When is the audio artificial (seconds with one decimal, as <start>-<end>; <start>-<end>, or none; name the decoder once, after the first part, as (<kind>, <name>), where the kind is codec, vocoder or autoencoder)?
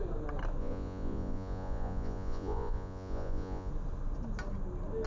0.6-3.7 (vocoder, Vocos)